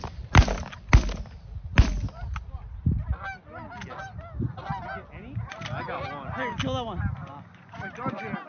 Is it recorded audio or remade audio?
recorded